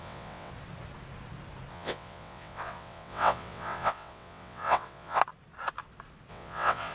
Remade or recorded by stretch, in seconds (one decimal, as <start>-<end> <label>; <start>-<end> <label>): 0.0-0.5 remade; 0.5-1.7 recorded; 1.7-5.2 remade; 5.2-6.3 recorded; 6.3-6.9 remade